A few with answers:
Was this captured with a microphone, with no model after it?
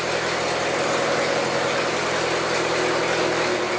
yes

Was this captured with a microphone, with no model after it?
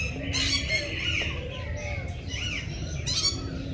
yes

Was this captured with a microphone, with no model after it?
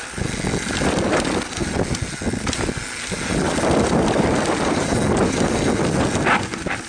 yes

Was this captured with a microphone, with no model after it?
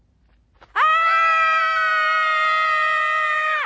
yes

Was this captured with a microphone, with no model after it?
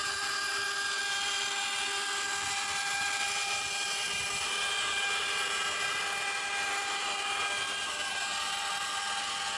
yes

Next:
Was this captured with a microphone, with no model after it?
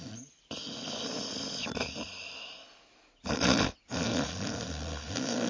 yes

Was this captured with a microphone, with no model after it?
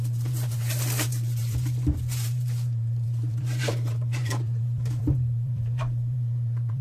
no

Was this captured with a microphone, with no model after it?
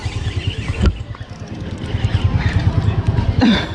yes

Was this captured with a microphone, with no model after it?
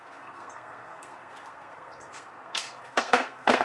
no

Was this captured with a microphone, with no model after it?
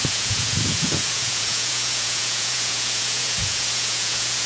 no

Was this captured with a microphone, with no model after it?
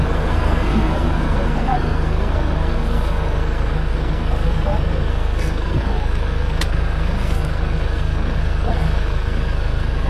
no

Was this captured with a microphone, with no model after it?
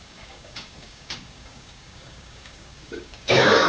no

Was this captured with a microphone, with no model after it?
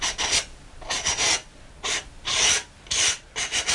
yes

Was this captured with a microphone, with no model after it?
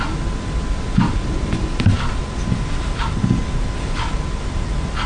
yes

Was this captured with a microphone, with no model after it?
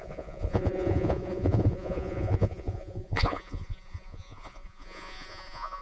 no